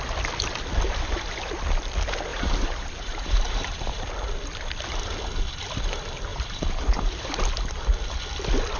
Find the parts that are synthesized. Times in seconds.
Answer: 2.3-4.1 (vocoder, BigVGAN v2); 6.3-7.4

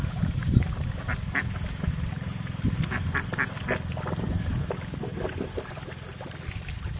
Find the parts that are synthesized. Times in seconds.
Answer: none

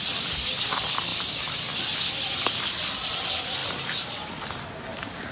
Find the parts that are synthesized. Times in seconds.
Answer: 0.0-1.1 (vocoder, BigVGAN v2); 1.7-5.3

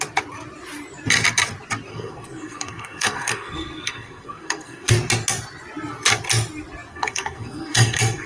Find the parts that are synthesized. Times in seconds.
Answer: 1.9-4.9 (codec, SNAC); 6.9-8.3

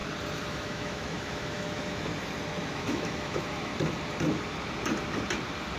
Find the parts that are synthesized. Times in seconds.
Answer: 0.5-2.1 (autoencoder, DAC-VAE); 2.7-3.7